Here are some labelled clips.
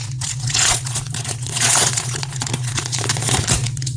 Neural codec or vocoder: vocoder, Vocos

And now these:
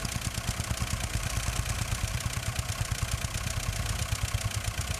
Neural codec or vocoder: none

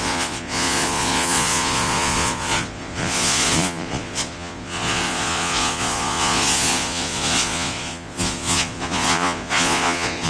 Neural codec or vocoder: vocoder, Vocos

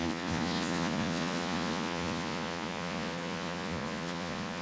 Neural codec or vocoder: vocoder, Vocos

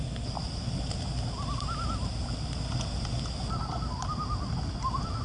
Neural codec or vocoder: none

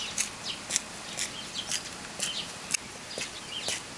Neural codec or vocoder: none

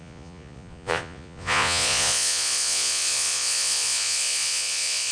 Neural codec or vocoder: vocoder, Vocos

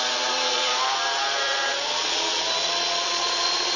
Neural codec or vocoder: vocoder, Vocos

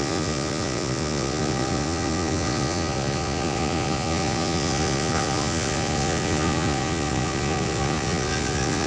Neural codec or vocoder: vocoder, Vocos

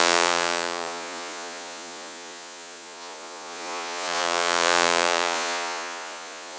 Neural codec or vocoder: vocoder, Vocos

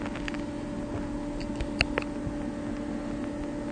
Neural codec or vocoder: none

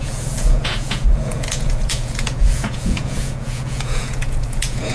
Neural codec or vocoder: vocoder, Vocos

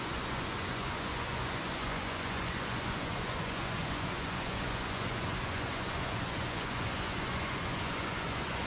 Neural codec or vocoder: vocoder, Vocos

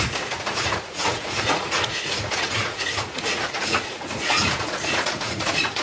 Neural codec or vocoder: vocoder, Vocos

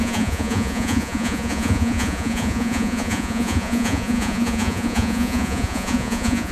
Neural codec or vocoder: vocoder, Vocos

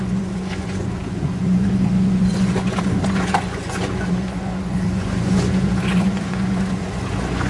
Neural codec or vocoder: vocoder, Vocos